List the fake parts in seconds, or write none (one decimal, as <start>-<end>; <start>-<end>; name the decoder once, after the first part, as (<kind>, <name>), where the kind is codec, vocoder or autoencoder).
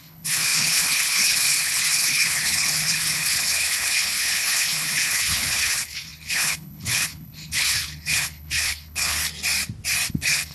0.0-9.2 (codec, HILCodec); 10.1-10.5